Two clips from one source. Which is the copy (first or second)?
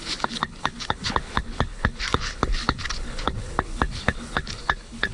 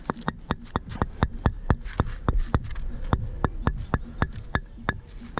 first